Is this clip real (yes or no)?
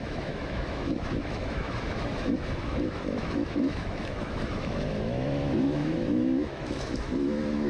no